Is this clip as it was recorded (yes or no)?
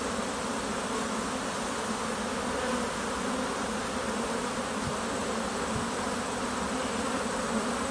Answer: yes